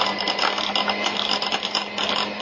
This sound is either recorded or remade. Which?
recorded